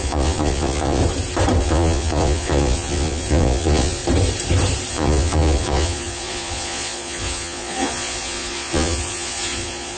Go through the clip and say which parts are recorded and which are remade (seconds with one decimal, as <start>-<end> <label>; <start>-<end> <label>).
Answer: 0.0-1.0 remade; 1.0-1.6 recorded; 1.6-4.0 remade; 4.0-4.9 recorded; 4.9-10.0 remade